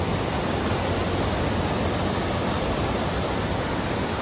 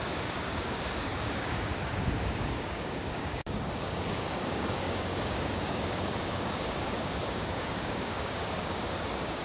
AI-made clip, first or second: second